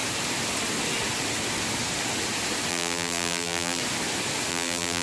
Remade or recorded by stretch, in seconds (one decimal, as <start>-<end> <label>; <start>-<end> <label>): 0.0-2.7 recorded; 2.7-3.8 remade; 3.8-4.5 recorded; 4.5-5.0 remade